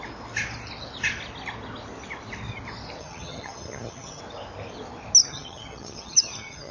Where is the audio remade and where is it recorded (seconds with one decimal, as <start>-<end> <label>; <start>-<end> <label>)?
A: 0.0-3.0 recorded; 3.0-4.2 remade; 4.2-5.2 recorded; 5.2-6.7 remade